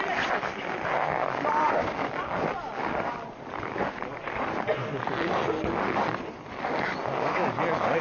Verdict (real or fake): real